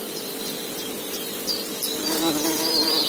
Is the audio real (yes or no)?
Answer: no